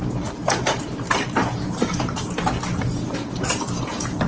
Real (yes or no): no